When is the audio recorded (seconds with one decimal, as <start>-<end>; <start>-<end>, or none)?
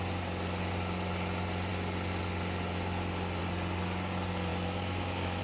0.0-4.5